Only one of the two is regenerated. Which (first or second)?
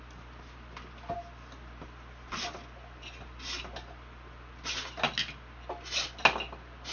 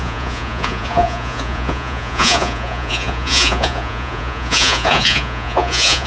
second